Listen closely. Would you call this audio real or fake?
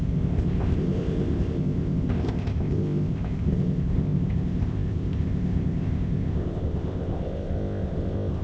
fake